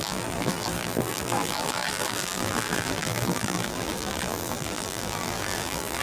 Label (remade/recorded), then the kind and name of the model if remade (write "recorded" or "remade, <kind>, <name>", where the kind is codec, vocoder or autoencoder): remade, vocoder, BigVGAN v2